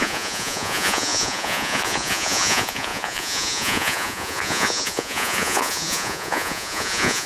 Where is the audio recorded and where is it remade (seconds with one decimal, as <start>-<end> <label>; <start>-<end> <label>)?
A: 0.0-7.3 remade